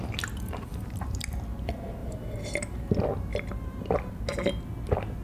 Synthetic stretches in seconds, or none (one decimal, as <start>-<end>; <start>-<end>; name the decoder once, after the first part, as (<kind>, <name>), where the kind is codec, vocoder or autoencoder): 0.7-1.2 (vocoder, BigVGAN v2); 2.0-2.9

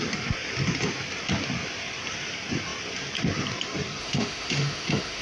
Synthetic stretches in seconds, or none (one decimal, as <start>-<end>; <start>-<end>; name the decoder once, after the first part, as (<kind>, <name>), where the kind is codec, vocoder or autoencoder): 4.0-5.2 (autoencoder, DAC-VAE)